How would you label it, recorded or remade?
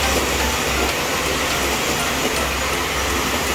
recorded